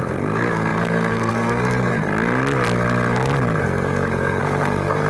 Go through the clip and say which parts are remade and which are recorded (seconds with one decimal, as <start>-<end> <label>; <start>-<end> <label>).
0.0-1.9 remade; 1.9-3.6 recorded; 3.6-5.1 remade